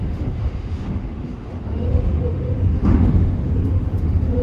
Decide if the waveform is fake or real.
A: fake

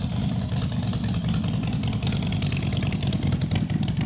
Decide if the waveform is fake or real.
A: real